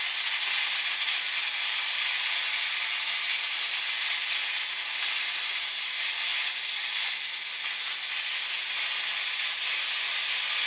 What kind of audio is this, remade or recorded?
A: recorded